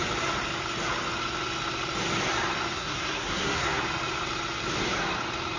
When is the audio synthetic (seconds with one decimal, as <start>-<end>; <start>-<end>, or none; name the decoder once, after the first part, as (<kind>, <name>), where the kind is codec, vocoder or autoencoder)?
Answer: 2.7-3.8 (codec, SNAC)